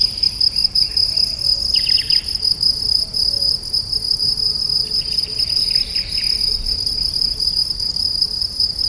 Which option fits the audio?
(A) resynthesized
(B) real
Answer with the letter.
B